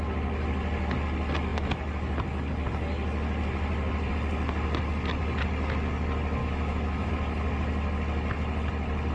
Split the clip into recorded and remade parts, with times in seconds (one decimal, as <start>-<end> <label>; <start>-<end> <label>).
0.0-6.4 recorded; 6.4-7.1 remade; 7.1-9.1 recorded